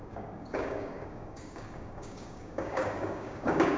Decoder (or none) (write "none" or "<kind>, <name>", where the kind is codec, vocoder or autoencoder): codec, DAC